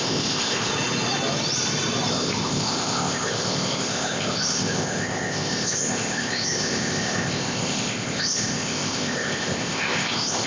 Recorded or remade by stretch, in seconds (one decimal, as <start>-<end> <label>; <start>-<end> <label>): 0.0-0.7 remade; 0.7-2.1 recorded; 2.1-10.5 remade